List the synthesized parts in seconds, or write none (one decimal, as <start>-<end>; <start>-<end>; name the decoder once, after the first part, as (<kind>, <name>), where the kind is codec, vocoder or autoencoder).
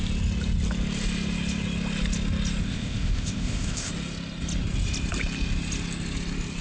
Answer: 2.6-3.9 (codec, ZipCodec)